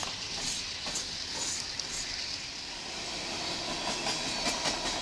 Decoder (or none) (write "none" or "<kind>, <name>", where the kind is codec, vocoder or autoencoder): none